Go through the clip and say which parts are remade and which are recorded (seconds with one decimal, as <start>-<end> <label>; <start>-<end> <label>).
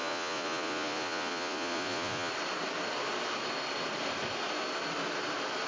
0.0-2.3 remade; 2.3-5.7 recorded